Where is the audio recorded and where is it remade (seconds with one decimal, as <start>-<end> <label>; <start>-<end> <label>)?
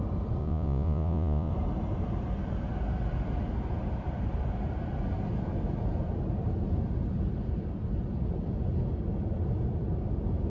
0.0-0.4 recorded; 0.4-1.5 remade; 1.5-10.5 recorded